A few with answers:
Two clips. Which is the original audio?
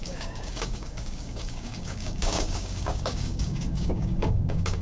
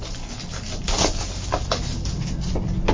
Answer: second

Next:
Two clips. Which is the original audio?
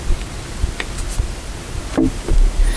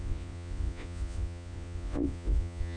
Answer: first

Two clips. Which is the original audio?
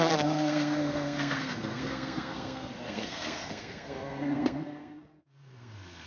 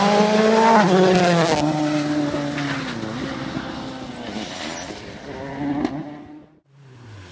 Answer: second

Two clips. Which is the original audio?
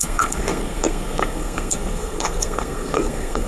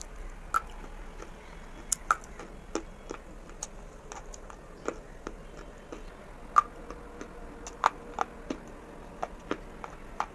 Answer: second